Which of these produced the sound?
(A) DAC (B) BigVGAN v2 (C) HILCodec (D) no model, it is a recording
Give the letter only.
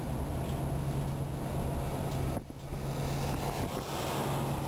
D